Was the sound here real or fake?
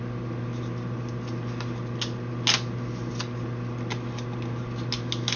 real